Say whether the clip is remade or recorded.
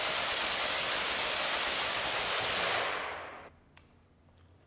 recorded